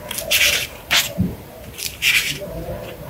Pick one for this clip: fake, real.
fake